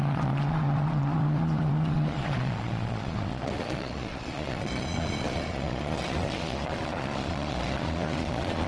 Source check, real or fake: fake